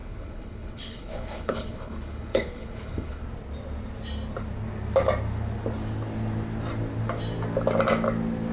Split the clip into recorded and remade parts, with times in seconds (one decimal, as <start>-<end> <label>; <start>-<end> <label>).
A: 0.0-3.2 remade; 3.2-8.5 recorded